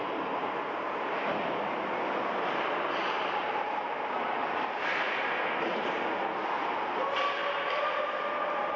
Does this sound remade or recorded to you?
recorded